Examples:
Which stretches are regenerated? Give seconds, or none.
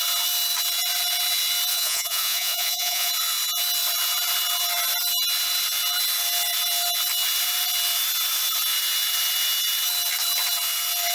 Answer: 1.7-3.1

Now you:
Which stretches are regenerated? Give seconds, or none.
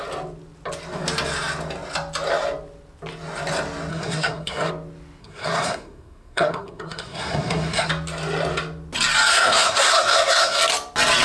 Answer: 3.9-4.7; 5.2-7.9; 9.3-10.6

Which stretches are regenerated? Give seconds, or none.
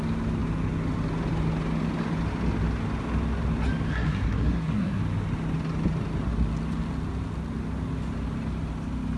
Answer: 3.9-5.0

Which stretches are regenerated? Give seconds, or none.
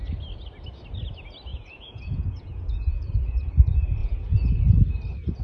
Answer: 1.5-3.5; 4.0-4.6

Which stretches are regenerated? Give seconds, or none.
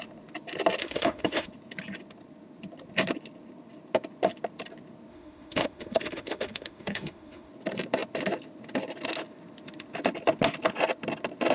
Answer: 0.8-1.5; 5.1-7.5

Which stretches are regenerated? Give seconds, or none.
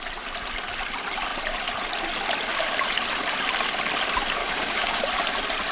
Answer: 4.4-5.0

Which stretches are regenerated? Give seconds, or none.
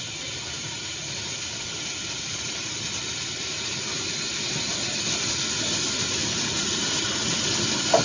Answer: none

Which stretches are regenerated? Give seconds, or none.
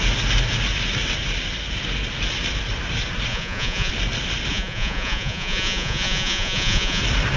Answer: 3.3-3.9; 4.5-7.0